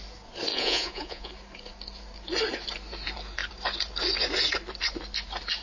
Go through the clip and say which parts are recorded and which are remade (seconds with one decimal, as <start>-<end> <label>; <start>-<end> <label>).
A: 0.0-0.5 recorded; 0.5-1.3 remade; 1.3-5.6 recorded